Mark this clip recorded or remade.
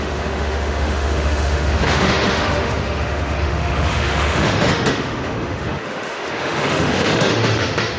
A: remade